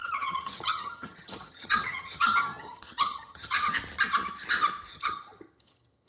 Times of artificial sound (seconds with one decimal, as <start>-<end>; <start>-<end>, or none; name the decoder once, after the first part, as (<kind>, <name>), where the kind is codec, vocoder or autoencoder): 0.0-3.7 (vocoder, HiFi-GAN); 4.9-6.1